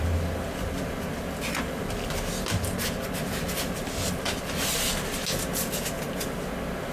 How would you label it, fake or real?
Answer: real